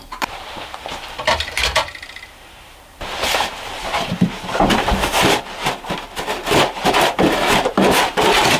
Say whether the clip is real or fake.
fake